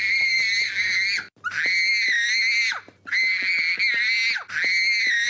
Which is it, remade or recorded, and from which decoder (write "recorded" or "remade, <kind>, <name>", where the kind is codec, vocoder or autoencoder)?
recorded